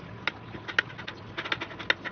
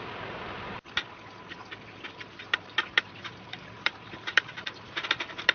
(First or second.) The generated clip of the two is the second